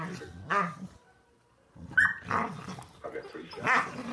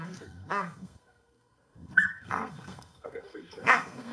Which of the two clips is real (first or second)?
first